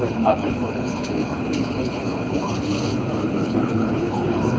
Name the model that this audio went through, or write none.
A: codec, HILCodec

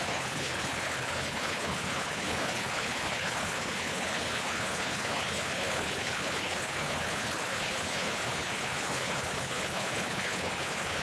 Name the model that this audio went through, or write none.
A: codec, HILCodec